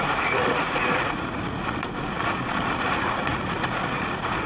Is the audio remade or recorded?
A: remade